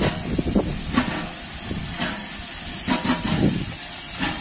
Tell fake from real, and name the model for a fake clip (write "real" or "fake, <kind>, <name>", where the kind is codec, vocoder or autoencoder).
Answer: real